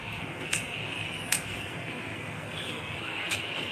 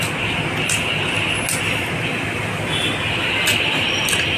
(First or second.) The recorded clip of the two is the second